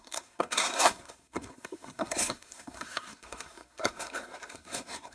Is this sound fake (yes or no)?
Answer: yes